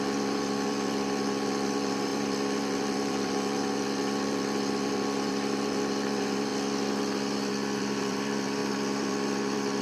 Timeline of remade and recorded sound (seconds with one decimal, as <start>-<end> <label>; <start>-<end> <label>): 0.0-6.5 remade; 6.5-7.5 recorded; 7.5-9.8 remade